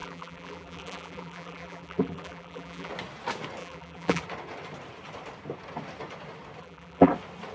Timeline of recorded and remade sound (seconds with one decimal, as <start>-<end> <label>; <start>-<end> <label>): 0.0-2.9 remade; 2.9-3.6 recorded; 3.6-4.2 remade; 4.2-6.6 recorded; 6.6-7.1 remade; 7.1-7.5 recorded